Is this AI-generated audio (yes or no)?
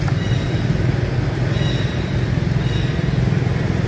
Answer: no